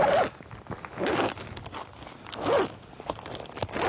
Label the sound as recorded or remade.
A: recorded